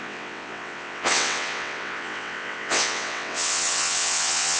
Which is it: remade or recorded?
remade